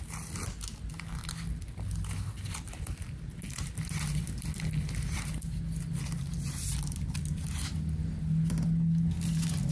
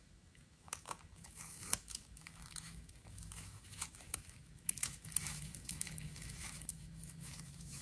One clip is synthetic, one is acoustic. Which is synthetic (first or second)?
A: second